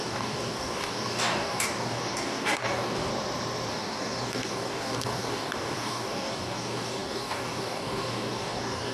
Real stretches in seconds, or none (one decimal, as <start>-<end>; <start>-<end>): 3.1-3.7